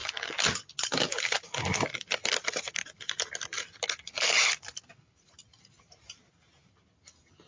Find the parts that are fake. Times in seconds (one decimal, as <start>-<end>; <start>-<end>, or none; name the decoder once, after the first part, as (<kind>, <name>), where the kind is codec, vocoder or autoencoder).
none